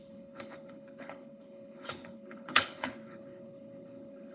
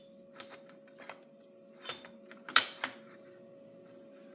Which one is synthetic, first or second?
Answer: first